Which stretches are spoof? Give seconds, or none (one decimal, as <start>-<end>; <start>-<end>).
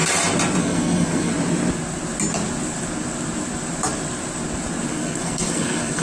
0.6-1.3; 4.9-6.0